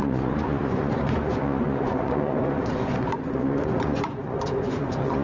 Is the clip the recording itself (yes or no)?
no